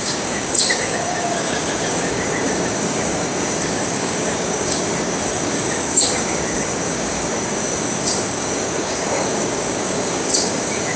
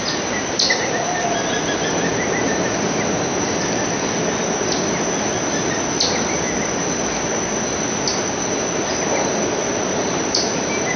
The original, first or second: second